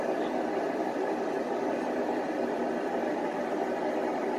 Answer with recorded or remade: remade